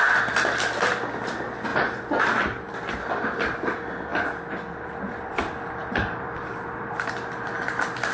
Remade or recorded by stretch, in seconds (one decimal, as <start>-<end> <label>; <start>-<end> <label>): 0.0-4.1 recorded; 4.1-7.1 remade; 7.1-8.1 recorded